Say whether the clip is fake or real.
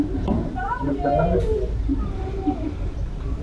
real